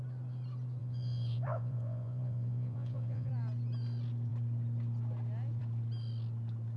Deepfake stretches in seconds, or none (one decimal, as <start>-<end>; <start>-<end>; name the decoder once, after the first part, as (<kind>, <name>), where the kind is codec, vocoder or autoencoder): 0.8-3.3 (vocoder, Vocos)

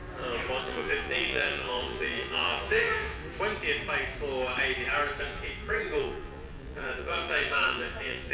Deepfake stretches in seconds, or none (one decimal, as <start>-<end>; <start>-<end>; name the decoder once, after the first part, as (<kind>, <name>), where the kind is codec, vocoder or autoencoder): 0.6-3.2 (vocoder, Vocos); 5.2-8.3

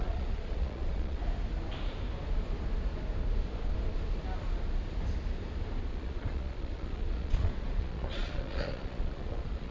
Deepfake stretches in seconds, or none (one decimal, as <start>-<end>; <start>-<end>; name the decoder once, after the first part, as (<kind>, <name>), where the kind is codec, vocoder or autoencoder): 0.0-1.2 (vocoder, Vocos); 5.8-9.7

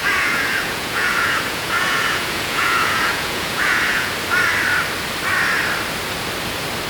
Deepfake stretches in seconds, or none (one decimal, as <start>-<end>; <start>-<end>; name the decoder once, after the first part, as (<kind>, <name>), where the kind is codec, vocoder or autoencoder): 0.0-4.1 (vocoder, Vocos)